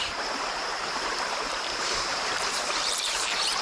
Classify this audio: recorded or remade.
remade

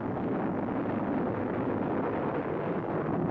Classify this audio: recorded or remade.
recorded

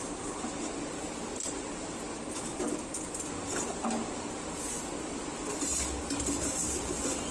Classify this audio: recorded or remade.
recorded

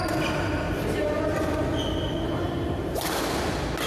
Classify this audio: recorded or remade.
recorded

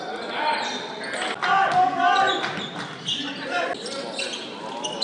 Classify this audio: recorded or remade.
recorded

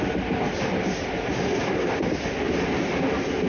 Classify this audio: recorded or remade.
recorded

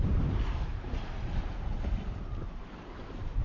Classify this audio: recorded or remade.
remade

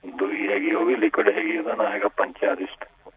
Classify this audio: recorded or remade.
remade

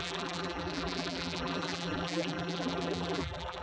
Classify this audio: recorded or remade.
remade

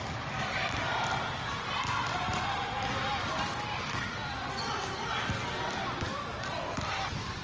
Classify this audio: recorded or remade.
recorded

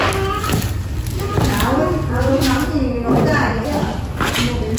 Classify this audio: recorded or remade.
recorded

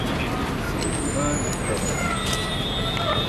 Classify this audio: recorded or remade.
recorded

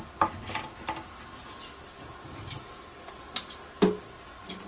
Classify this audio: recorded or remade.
recorded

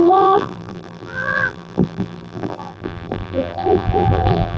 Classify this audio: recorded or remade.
remade